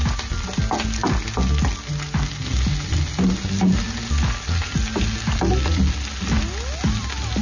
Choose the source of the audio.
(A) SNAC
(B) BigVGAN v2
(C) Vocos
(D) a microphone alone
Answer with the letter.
D